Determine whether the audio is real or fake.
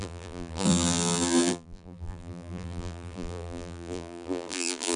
fake